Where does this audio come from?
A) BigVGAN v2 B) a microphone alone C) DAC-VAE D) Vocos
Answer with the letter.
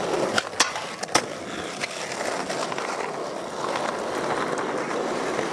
B